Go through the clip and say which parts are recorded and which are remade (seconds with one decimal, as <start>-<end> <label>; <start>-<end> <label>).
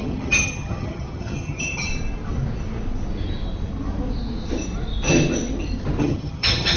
0.0-1.9 remade; 1.9-6.0 recorded; 6.0-6.8 remade